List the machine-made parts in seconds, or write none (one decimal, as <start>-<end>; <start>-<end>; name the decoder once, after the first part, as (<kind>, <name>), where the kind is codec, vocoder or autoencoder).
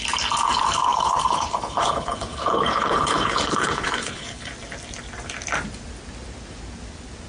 0.9-4.5 (codec, HILCodec)